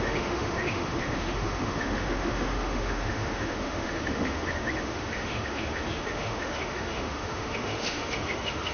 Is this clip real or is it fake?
fake